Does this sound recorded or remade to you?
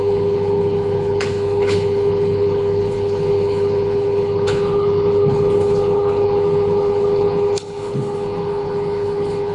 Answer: remade